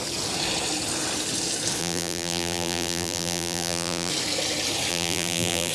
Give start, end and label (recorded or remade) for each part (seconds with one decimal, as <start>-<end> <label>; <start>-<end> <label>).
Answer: 0.0-1.8 recorded; 1.8-4.1 remade; 4.1-4.9 recorded; 4.9-5.7 remade